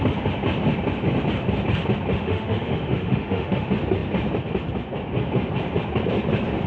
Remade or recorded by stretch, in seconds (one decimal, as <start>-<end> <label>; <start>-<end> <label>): 0.0-2.1 recorded; 2.1-3.6 remade; 3.6-6.7 recorded